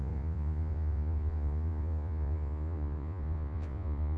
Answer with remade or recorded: remade